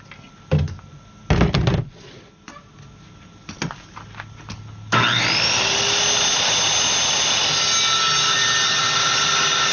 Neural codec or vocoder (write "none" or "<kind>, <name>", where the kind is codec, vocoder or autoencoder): none